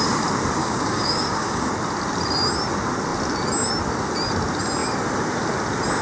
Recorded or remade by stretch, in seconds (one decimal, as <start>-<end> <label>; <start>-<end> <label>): 0.0-0.6 recorded; 0.6-1.7 remade; 1.7-6.0 recorded